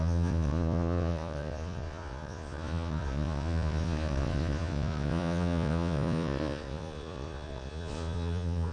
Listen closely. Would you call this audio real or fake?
fake